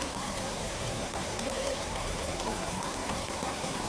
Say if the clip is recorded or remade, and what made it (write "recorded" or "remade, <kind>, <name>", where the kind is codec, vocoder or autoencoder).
remade, codec, SNAC